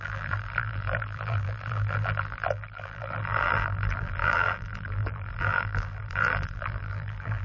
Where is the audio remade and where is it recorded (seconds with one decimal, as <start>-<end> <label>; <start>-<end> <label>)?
0.0-7.4 remade